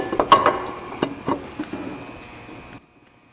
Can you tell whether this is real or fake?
real